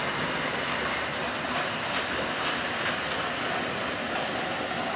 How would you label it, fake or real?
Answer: real